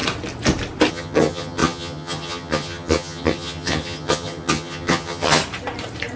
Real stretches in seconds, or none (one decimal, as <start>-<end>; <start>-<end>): 0.0-0.9; 5.4-6.2